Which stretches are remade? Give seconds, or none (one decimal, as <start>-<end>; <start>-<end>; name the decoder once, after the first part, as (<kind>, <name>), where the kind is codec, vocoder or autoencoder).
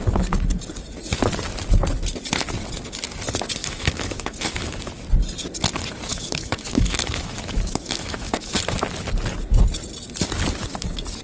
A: 3.6-4.9 (autoencoder, DAC-VAE); 6.1-8.6